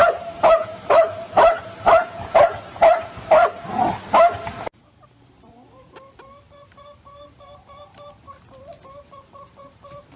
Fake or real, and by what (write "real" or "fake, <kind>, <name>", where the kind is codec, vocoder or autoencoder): fake, vocoder, BigVGAN v2